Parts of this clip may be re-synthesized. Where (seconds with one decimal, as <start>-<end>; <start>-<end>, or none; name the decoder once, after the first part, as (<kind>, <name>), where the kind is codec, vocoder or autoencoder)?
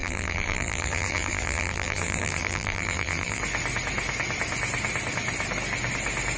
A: 0.0-3.4 (vocoder, BigVGAN v2)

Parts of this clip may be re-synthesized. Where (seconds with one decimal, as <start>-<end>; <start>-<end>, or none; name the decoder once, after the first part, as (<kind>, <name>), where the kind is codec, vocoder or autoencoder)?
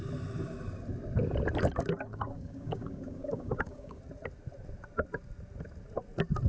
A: 2.1-4.0 (codec, DAC)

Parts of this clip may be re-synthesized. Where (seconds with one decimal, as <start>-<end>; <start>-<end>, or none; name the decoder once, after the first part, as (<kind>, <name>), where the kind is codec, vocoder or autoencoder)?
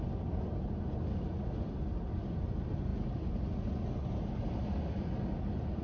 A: none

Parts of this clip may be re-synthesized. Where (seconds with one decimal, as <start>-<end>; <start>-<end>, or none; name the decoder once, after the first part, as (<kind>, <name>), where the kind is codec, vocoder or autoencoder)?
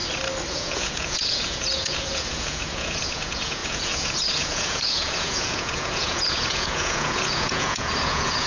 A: 0.5-8.5 (vocoder, Vocos)